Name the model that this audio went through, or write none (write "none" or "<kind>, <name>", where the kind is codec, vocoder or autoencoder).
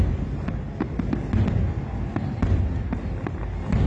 none